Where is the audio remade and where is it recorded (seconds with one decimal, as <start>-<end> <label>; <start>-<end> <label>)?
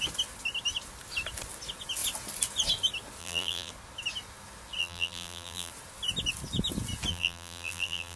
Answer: 0.0-3.2 recorded; 3.2-3.7 remade; 3.7-4.8 recorded; 4.8-5.7 remade; 5.7-7.1 recorded; 7.1-8.2 remade